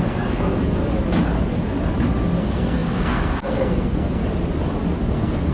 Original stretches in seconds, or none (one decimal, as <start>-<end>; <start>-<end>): 0.6-2.4; 4.2-5.1